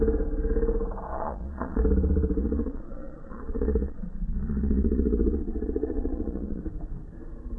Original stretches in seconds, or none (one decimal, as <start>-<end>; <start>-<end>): 0.0-1.1; 1.8-2.4; 6.6-7.6